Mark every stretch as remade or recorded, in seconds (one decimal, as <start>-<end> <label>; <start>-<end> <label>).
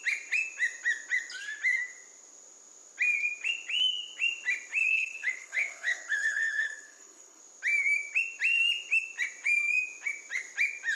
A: 0.0-4.9 recorded; 4.9-7.4 remade; 7.4-10.9 recorded